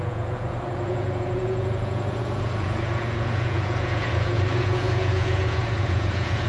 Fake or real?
fake